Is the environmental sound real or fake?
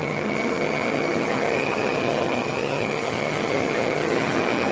fake